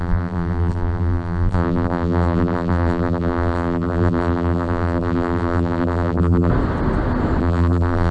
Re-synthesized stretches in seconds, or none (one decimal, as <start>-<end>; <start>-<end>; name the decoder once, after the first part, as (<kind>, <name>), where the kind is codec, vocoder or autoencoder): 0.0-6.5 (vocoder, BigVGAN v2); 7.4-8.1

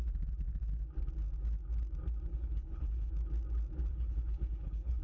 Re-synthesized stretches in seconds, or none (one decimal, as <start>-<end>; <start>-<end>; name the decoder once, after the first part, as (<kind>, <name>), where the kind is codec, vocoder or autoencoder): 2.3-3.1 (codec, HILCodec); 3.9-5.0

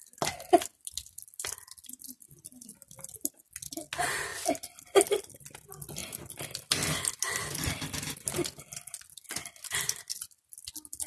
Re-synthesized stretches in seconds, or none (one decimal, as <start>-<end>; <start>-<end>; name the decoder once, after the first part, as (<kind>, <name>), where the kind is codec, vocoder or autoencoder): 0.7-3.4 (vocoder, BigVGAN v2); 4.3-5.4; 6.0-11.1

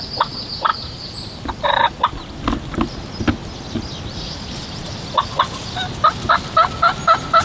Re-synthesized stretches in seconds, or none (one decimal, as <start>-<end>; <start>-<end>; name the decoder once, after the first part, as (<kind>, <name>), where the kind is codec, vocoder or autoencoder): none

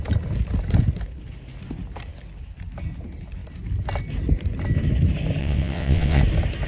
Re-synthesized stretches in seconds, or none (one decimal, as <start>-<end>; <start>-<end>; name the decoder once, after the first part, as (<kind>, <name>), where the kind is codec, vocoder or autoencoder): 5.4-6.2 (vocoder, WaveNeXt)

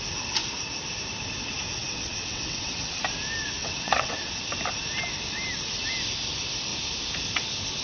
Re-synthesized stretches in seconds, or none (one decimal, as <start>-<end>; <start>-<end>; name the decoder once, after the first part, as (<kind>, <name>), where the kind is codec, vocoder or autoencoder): 1.8-3.0 (vocoder, WaveNeXt); 3.6-4.4

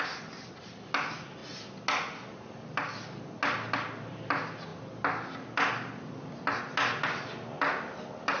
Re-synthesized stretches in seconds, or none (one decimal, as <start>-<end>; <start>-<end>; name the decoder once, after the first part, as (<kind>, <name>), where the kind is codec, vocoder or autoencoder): none

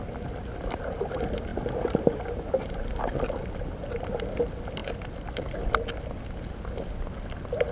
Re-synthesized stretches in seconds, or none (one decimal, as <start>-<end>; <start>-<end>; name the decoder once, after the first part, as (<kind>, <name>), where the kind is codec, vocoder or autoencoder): none